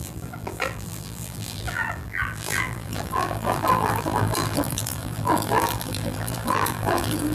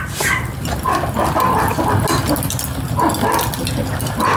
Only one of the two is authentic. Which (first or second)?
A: second